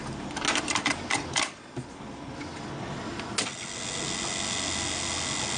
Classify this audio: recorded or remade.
recorded